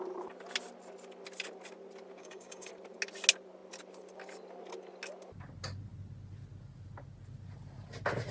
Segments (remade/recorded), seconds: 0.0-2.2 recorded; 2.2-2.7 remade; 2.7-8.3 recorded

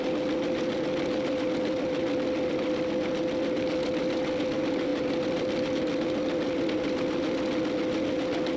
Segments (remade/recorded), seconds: 0.0-8.6 recorded

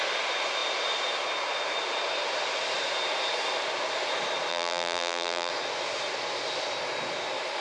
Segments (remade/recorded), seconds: 0.0-4.5 recorded; 4.5-5.5 remade; 5.5-7.6 recorded

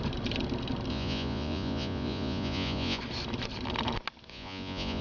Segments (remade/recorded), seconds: 0.0-0.9 recorded; 0.9-3.0 remade; 3.0-4.3 recorded; 4.3-5.0 remade

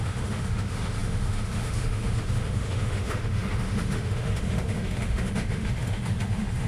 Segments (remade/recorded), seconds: 0.0-6.7 remade